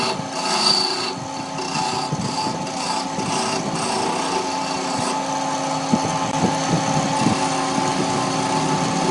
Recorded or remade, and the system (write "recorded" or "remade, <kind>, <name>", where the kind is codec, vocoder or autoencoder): recorded